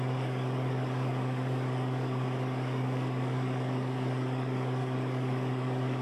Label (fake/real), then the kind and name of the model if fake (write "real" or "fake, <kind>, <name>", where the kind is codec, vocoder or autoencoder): fake, codec, DAC